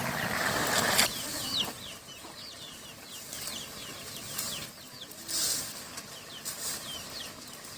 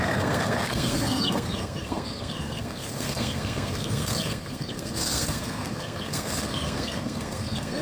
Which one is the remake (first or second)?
second